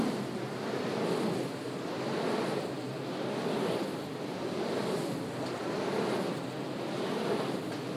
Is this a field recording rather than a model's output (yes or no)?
yes